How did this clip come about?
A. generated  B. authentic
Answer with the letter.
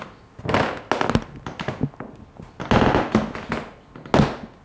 B